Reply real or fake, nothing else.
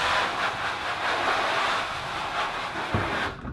real